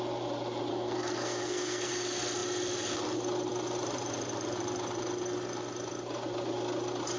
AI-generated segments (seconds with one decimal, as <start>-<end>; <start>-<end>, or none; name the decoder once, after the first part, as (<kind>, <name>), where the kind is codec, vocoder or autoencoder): 0.7-1.9 (codec, SNAC)